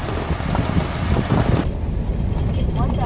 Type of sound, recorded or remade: recorded